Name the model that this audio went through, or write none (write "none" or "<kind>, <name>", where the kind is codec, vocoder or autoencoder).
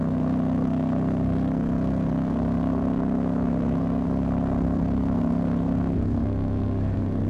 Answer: codec, SNAC